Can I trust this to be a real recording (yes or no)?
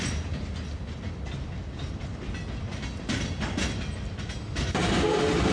yes